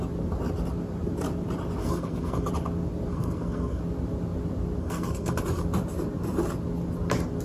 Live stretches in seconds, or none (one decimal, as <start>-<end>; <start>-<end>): 0.0-1.8; 2.5-3.1; 3.8-4.8; 5.4-7.4